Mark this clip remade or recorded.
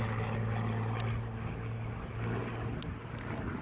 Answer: recorded